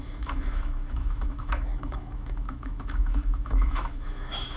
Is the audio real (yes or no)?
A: no